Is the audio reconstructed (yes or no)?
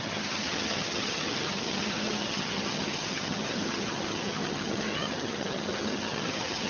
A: yes